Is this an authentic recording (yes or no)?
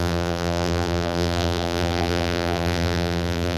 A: no